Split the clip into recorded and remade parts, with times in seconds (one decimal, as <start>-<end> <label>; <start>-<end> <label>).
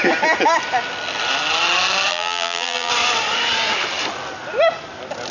0.0-2.1 recorded; 2.1-2.9 remade; 2.9-5.3 recorded